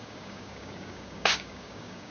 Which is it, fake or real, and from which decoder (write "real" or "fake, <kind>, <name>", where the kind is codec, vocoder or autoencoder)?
fake, codec, DAC